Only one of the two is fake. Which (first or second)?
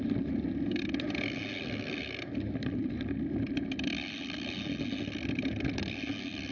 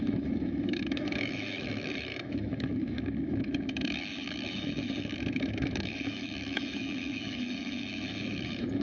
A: second